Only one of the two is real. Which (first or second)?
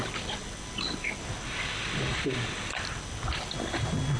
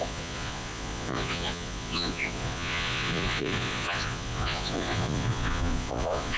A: first